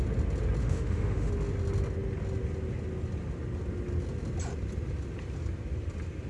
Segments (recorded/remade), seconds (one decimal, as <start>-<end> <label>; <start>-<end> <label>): 0.0-0.6 recorded; 0.6-1.3 remade; 1.3-6.3 recorded